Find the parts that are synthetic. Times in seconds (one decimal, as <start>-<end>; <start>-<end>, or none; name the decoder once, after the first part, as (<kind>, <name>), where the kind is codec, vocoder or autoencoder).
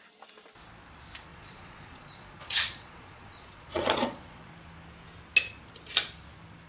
1.3-4.5 (vocoder, Vocos)